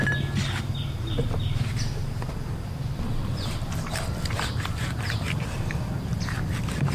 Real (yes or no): yes